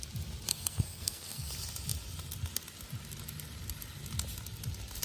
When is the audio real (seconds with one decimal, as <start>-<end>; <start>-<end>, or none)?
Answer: 0.0-0.5; 1.5-5.0